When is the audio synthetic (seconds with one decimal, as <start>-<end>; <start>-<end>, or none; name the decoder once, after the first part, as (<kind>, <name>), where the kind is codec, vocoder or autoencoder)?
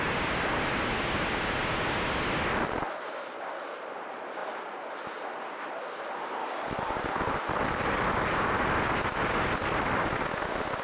6.4-7.0 (codec, DAC)